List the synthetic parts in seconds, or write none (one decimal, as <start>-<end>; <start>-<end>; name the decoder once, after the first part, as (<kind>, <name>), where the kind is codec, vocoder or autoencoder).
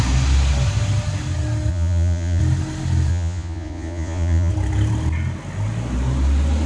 1.7-2.4 (vocoder, Vocos); 3.1-4.5